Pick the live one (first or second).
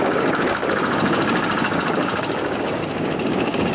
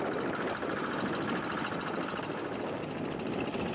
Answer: second